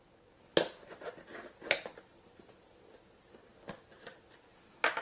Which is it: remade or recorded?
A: recorded